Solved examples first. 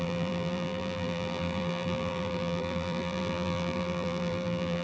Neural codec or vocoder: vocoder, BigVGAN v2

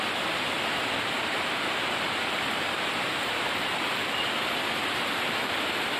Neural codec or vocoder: none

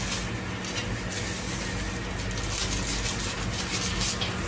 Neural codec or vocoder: none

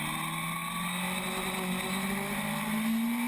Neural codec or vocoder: none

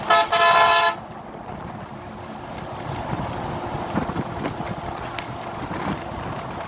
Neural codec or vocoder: none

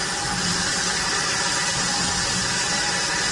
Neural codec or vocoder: vocoder, BigVGAN v2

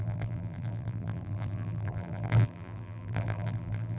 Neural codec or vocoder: vocoder, BigVGAN v2